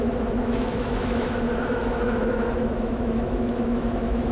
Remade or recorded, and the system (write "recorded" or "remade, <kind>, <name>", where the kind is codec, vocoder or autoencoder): remade, autoencoder, DAC-VAE